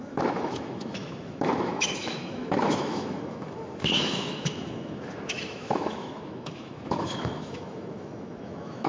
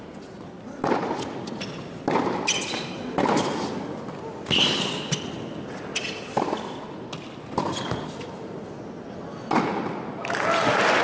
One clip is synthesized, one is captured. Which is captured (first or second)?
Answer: second